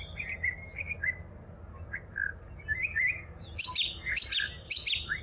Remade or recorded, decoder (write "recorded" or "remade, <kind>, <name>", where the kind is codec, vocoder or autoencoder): recorded